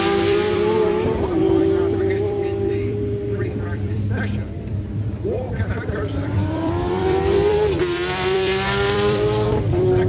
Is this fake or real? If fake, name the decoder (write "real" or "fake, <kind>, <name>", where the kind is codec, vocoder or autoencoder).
fake, vocoder, BigVGAN v2